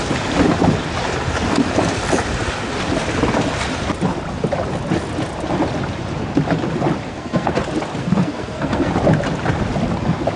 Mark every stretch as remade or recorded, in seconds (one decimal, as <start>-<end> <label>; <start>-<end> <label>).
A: 0.0-7.1 recorded; 7.1-7.6 remade; 7.6-8.0 recorded; 8.0-8.9 remade; 8.9-10.4 recorded